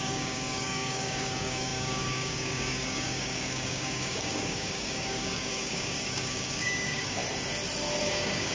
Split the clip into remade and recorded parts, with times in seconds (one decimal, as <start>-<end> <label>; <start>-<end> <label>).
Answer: 0.0-7.2 remade; 7.2-8.0 recorded; 8.0-8.5 remade